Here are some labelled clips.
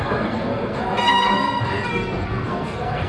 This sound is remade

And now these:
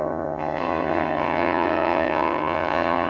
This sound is remade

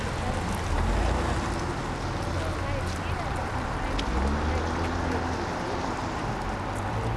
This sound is recorded